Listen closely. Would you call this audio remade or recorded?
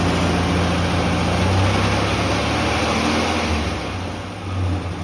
recorded